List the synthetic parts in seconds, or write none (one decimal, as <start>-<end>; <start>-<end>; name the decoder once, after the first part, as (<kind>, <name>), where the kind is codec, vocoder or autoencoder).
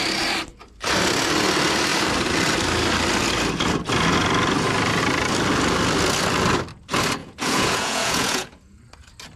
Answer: 7.2-8.8 (vocoder, Vocos)